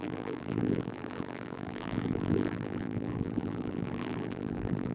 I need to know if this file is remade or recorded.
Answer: remade